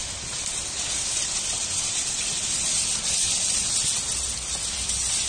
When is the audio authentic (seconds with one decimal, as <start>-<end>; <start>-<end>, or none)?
0.0-5.3